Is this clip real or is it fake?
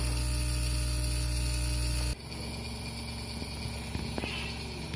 real